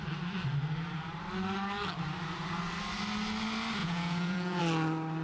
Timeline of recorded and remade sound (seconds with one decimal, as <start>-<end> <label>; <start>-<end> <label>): 0.0-3.8 recorded; 3.8-4.6 remade; 4.6-5.2 recorded